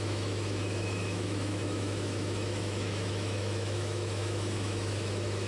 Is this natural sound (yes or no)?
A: no